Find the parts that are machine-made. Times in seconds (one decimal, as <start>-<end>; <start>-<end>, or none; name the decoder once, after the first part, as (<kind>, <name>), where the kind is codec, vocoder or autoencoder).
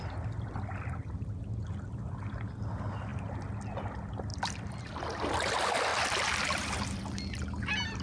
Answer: 4.3-5.0 (vocoder, BigVGAN v2)